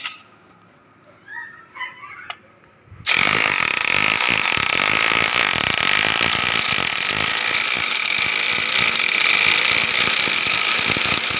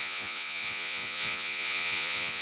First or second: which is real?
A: first